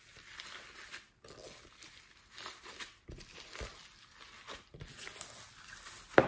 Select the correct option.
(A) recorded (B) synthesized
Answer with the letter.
A